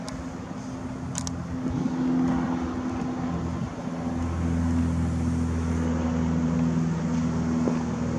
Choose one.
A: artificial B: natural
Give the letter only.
B